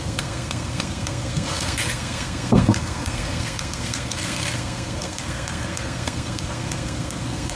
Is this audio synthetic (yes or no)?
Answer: yes